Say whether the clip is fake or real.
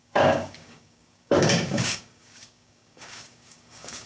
fake